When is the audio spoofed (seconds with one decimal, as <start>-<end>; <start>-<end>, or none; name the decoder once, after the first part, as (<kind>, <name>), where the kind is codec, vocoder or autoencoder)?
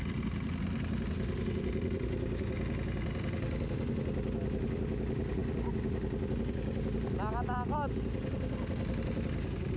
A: none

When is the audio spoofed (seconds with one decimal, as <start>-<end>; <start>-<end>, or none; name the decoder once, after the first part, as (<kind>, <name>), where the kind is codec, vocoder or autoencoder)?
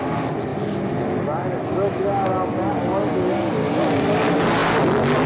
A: none